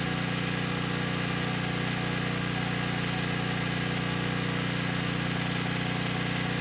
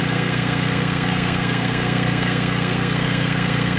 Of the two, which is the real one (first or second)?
first